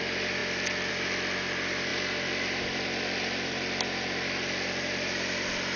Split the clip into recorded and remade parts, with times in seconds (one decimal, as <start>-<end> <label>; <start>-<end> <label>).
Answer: 0.0-5.8 recorded

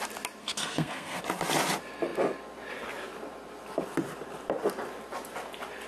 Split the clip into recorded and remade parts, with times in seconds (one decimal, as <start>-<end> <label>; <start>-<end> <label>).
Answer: 0.0-0.4 recorded; 0.4-1.2 remade; 1.2-5.9 recorded